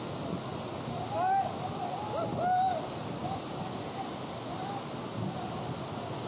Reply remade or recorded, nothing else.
recorded